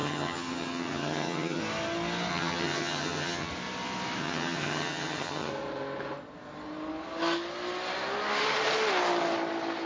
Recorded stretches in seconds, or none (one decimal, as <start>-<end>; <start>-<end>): 1.6-2.3; 3.5-4.2; 5.5-9.9